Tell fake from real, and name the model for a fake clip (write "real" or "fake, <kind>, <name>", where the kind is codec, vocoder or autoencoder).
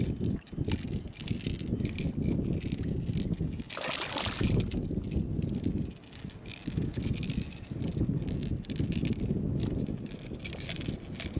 real